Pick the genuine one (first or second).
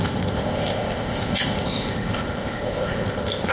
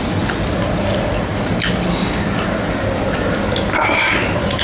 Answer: second